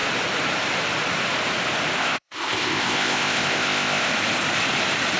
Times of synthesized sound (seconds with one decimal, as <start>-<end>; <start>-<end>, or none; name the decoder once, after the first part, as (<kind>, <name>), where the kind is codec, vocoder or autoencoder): 2.0-4.1 (codec, ZipCodec)